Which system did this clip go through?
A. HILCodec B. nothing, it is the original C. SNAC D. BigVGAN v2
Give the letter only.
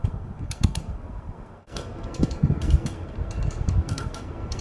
C